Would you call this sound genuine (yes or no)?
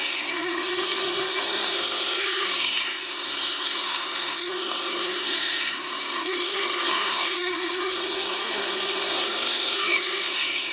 no